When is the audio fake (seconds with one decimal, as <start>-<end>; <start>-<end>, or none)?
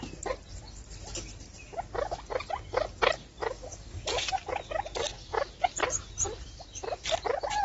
3.4-4.3